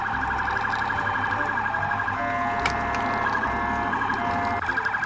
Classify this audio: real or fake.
real